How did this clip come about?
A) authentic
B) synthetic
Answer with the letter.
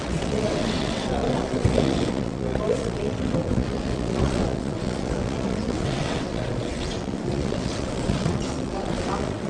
B